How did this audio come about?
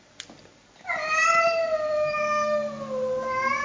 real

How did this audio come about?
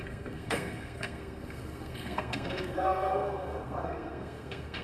fake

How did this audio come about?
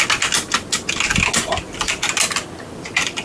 real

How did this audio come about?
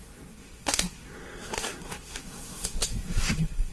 fake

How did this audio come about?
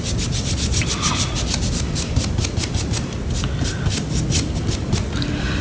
real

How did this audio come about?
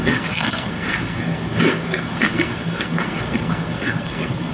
fake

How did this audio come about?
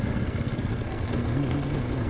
fake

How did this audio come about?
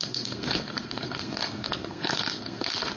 fake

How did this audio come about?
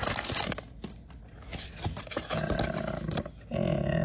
real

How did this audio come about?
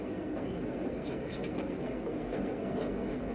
fake